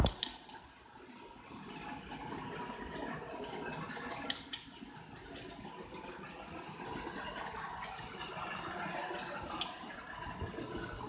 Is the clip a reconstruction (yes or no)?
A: no